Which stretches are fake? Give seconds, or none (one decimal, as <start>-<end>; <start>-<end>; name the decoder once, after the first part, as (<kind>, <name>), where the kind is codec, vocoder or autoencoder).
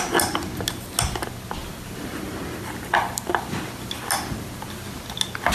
1.6-4.9 (vocoder, BigVGAN v2)